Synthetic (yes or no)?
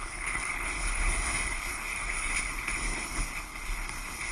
yes